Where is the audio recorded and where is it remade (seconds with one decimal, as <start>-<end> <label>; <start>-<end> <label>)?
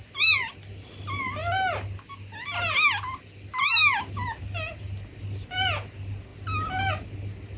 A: 0.0-7.6 recorded